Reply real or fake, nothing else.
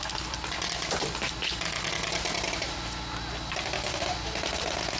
fake